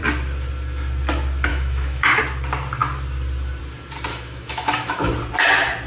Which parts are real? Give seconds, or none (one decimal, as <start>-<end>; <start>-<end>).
0.0-1.5; 2.2-4.1; 5.1-5.9